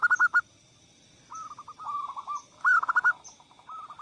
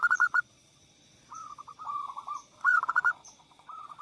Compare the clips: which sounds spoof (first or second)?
second